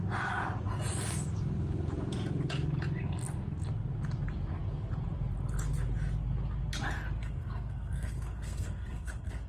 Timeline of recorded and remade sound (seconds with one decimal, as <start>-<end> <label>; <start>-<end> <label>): 0.0-7.2 recorded; 7.2-9.5 remade